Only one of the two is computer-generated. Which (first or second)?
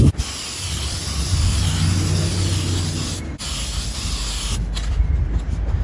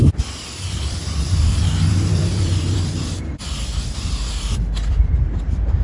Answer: second